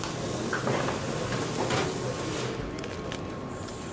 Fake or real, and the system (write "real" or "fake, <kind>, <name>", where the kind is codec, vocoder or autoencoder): real